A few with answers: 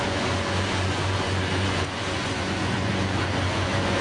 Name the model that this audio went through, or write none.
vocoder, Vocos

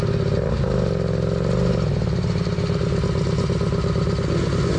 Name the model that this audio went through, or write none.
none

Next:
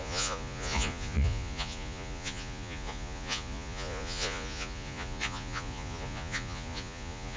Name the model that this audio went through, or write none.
vocoder, Vocos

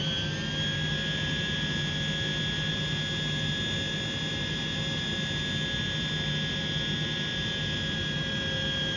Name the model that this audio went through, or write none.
none